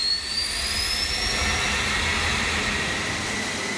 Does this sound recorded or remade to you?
recorded